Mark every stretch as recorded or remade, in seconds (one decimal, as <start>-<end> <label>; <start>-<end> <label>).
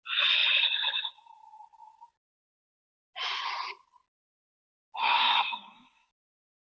0.0-5.0 recorded; 5.0-6.1 remade; 6.1-6.7 recorded